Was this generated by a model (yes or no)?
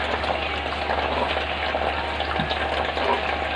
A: no